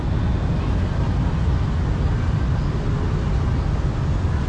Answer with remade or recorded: recorded